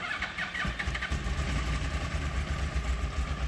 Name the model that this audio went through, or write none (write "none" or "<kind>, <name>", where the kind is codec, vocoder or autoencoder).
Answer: none